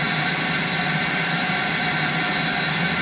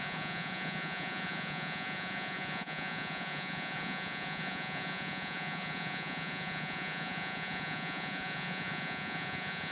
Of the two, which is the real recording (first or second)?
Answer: first